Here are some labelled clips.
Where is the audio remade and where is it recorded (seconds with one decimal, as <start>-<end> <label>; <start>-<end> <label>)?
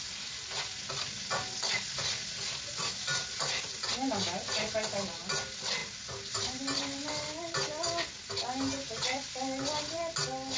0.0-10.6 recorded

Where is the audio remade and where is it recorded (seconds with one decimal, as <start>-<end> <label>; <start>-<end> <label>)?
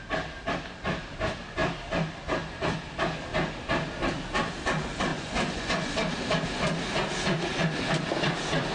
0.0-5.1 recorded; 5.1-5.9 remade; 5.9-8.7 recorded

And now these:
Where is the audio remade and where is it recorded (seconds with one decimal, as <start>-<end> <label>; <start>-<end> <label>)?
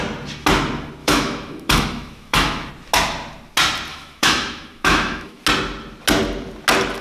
0.0-1.0 recorded; 1.0-2.7 remade; 2.7-3.9 recorded; 3.9-5.4 remade; 5.4-7.0 recorded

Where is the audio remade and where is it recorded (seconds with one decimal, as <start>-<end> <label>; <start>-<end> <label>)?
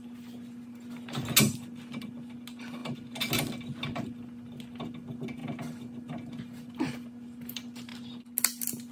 0.0-8.9 recorded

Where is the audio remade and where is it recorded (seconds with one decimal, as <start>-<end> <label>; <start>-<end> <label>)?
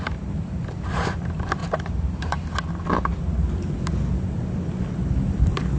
0.0-1.6 remade; 1.6-4.2 recorded; 4.2-5.8 remade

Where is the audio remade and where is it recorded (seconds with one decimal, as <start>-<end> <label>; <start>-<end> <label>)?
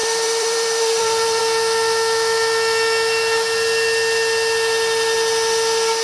0.0-1.4 remade; 1.4-6.0 recorded